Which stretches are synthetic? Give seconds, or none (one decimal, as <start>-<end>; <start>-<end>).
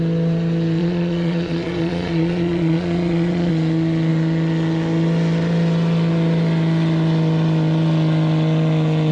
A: 0.8-3.5